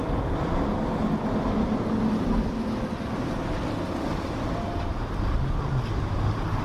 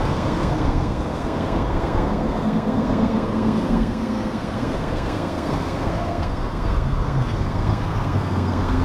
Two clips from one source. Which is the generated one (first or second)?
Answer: second